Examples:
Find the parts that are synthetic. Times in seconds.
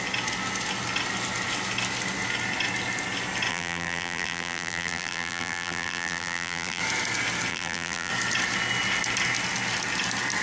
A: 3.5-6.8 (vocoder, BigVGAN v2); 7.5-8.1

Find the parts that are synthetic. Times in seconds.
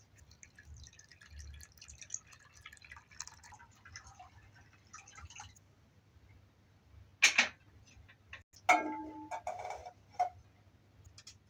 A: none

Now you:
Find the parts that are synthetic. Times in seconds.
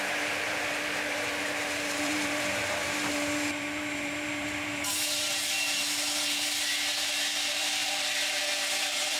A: 0.0-9.2 (vocoder, BigVGAN v2)